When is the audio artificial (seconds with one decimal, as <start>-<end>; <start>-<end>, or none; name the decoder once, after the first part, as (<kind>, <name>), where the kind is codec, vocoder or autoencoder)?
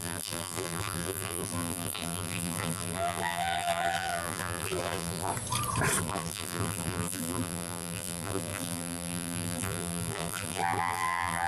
0.0-5.3 (vocoder, BigVGAN v2); 6.0-11.5